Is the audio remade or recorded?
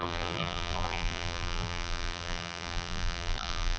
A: remade